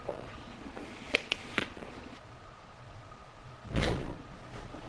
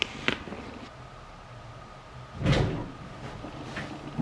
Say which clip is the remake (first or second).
first